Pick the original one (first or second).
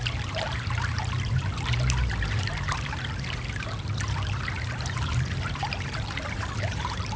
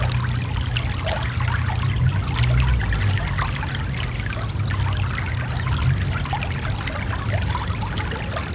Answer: second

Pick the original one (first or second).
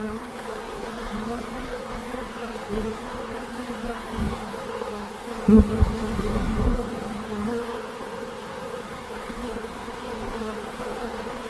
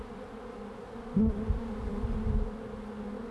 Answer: second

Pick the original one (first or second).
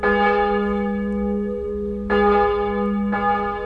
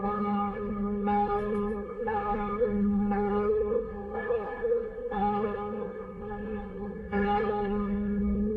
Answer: first